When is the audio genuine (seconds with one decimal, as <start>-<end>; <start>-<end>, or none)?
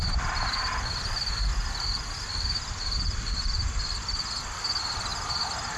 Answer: 0.0-5.8